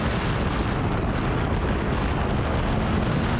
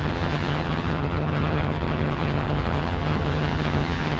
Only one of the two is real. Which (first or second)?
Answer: first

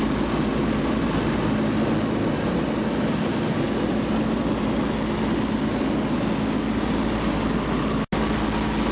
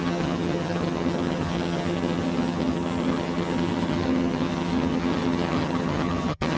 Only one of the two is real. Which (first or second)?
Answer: first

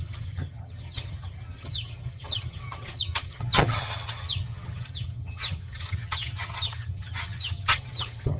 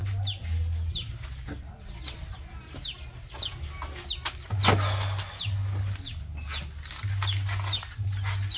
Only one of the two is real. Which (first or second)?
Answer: second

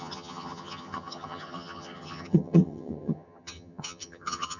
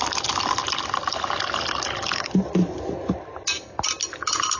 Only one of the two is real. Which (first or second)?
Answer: second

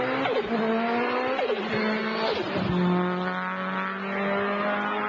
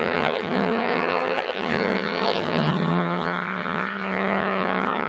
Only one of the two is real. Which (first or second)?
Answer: first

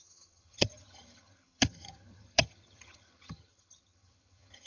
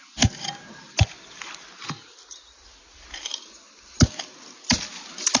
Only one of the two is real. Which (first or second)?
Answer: second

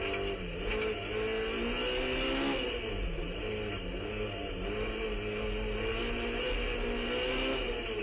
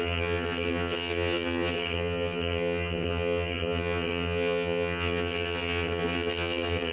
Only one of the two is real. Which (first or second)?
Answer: first